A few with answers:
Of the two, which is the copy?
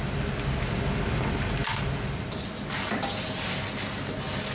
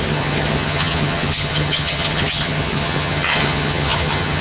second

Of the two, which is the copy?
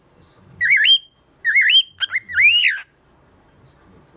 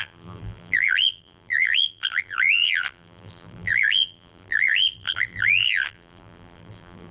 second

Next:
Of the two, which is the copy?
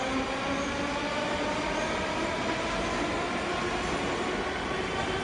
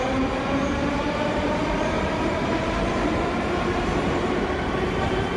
second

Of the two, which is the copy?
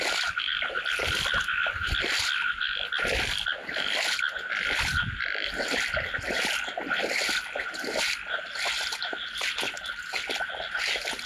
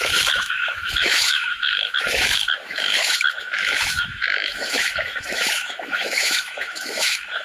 second